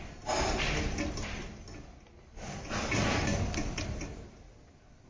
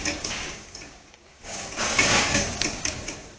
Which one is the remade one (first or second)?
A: second